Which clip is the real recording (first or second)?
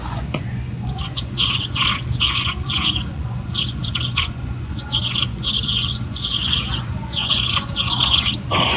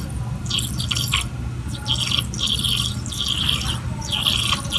second